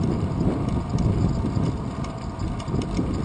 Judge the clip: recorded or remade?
remade